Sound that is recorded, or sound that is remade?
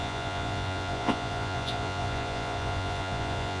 remade